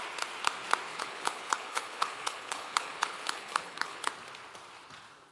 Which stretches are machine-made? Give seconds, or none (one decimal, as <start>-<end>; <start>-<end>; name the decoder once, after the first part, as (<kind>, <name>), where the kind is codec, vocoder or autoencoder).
0.9-4.1 (codec, HILCodec)